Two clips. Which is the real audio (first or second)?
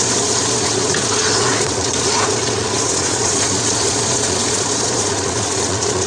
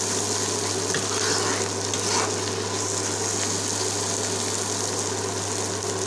second